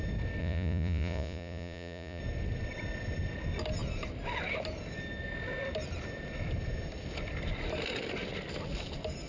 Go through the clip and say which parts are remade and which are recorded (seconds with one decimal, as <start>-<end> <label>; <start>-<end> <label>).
0.0-0.4 recorded; 0.4-2.2 remade; 2.2-9.3 recorded